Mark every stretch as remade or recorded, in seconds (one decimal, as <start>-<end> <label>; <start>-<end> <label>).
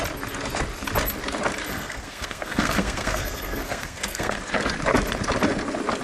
0.0-1.7 recorded; 1.7-4.4 remade; 4.4-6.0 recorded